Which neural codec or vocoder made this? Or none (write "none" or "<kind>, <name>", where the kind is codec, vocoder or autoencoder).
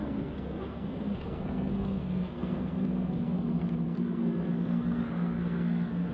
codec, SNAC